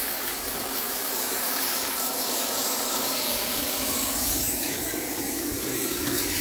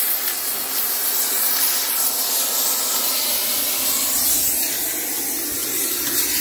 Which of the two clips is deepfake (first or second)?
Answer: first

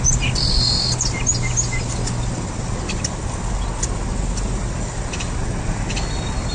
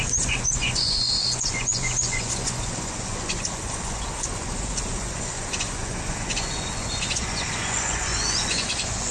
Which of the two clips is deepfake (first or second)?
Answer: second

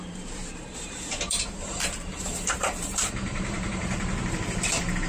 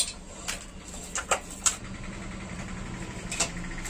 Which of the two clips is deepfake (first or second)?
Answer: first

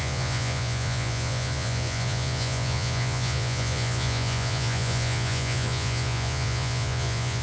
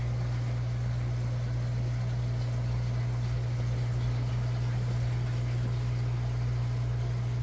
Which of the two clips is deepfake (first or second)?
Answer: first